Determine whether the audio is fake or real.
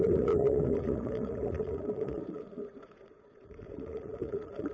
fake